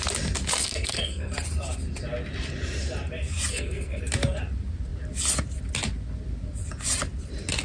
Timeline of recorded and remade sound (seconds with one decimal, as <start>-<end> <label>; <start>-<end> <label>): 0.0-0.6 recorded; 0.6-1.3 remade; 1.3-3.5 recorded; 3.5-4.0 remade; 4.0-7.6 recorded